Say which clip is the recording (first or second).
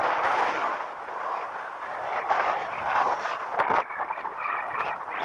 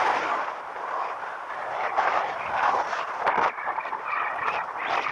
first